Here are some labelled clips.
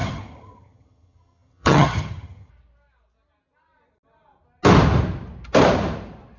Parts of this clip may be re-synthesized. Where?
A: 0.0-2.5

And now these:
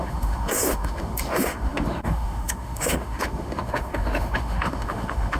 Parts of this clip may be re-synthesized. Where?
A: 0.0-5.4